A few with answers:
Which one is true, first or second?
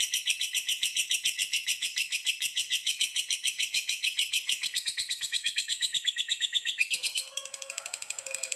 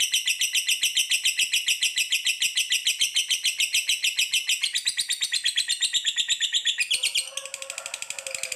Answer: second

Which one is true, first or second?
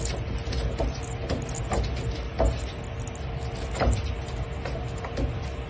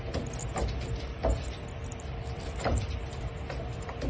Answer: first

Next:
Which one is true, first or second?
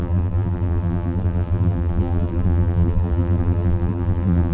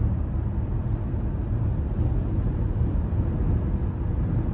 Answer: second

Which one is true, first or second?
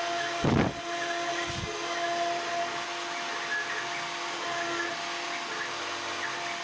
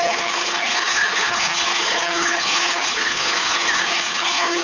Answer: first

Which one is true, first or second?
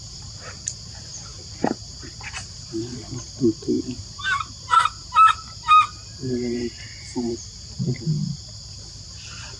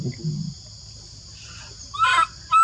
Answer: second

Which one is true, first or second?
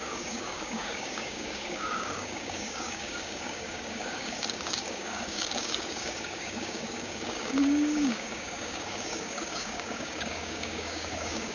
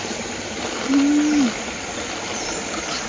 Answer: second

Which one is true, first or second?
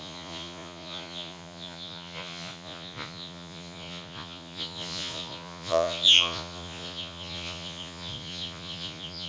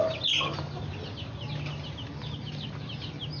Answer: second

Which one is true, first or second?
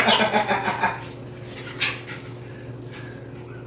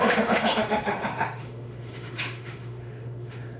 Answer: first